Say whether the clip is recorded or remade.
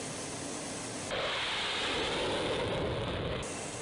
recorded